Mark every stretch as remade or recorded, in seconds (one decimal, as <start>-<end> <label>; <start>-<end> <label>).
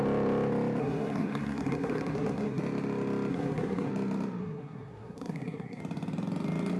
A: 0.0-0.8 recorded; 0.8-2.6 remade; 2.6-3.3 recorded; 3.3-3.9 remade; 3.9-4.4 recorded; 4.4-5.8 remade; 5.8-6.8 recorded